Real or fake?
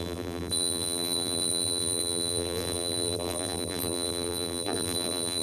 fake